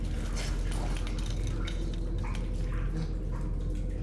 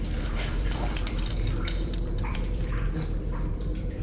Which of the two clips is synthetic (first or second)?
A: second